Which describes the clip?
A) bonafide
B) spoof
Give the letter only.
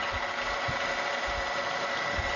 A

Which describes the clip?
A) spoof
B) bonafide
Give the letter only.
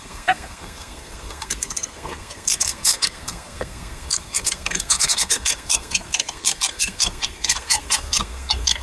A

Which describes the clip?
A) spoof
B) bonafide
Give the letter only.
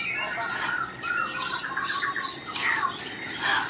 B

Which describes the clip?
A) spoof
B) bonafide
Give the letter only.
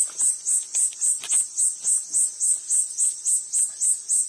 B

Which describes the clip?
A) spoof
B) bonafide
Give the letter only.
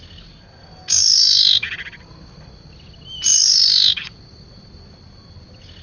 B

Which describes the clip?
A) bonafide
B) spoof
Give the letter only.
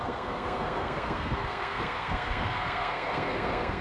B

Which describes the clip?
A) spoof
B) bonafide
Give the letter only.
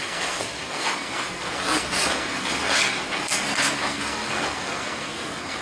A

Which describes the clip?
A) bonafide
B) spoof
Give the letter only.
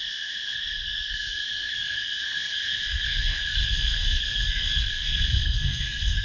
B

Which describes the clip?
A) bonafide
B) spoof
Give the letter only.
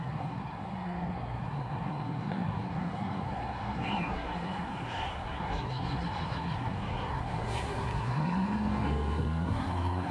B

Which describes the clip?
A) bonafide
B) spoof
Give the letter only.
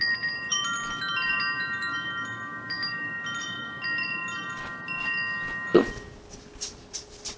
A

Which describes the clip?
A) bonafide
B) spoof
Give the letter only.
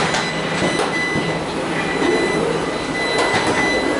A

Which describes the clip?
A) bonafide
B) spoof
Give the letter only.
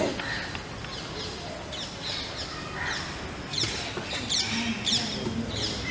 A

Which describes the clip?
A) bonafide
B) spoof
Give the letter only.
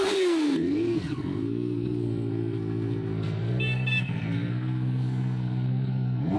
B